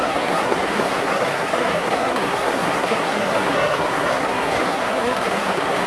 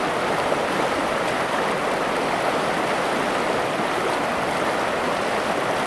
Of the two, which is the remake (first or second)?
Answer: first